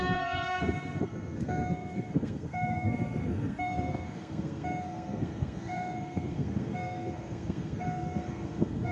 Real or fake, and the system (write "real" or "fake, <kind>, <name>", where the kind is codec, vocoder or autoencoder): fake, codec, SNAC